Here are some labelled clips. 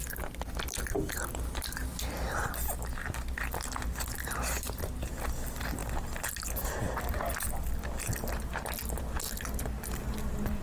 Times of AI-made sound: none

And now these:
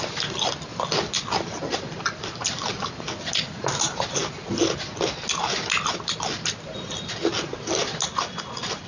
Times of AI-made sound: none

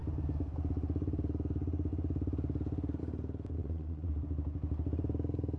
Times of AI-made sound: 3.6-4.1